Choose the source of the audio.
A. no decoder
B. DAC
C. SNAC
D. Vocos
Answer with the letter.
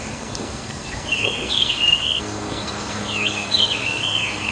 C